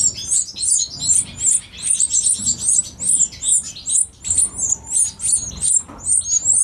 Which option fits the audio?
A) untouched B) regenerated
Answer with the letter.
A